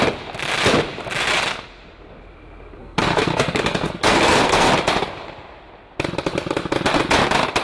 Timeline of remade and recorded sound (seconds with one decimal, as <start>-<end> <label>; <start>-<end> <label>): 0.0-2.8 recorded; 2.8-4.7 remade; 4.7-7.6 recorded